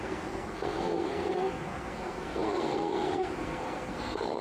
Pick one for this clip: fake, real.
fake